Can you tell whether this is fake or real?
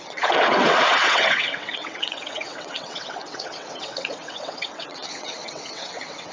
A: fake